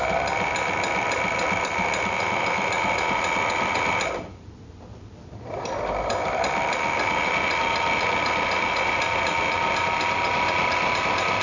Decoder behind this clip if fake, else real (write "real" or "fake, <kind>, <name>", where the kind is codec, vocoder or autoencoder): real